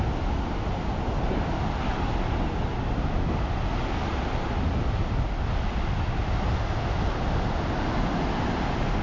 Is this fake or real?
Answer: real